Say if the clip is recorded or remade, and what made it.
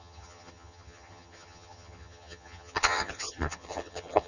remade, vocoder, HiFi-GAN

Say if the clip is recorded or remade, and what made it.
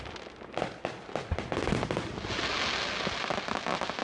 recorded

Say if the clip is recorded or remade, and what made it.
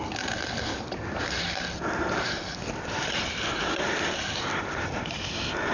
remade, vocoder, BigVGAN v2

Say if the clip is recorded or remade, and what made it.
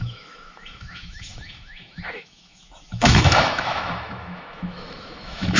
remade, autoencoder, DAC-VAE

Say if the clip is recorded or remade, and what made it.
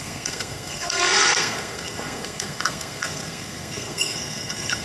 remade, codec, SNAC